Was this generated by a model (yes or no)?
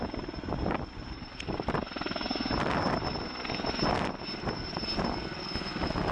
no